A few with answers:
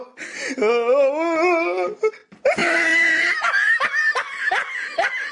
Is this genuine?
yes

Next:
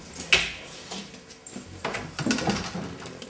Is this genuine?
yes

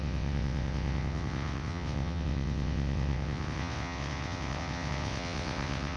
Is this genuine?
no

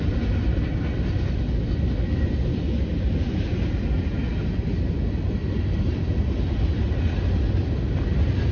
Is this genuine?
yes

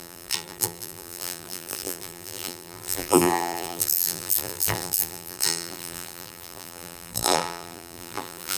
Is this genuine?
no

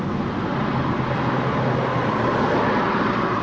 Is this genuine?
yes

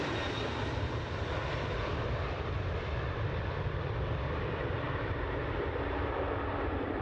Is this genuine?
no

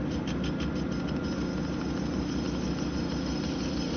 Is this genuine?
yes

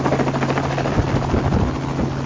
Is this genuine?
yes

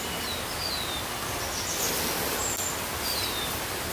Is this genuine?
yes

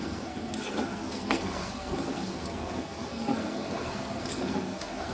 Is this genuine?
no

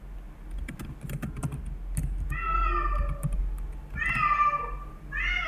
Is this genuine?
yes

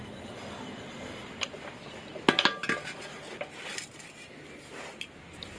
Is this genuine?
yes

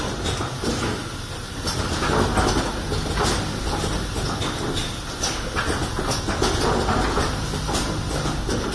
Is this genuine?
yes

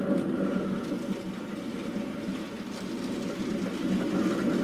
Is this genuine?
yes